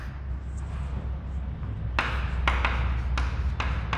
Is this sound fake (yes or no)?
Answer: no